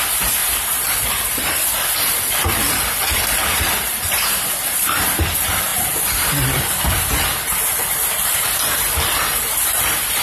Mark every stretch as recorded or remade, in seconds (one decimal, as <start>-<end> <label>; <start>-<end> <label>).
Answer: 0.0-10.2 remade